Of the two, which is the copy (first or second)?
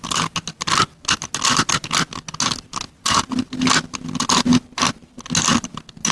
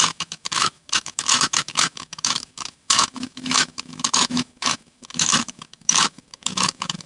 second